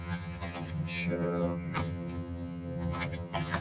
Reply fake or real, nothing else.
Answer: fake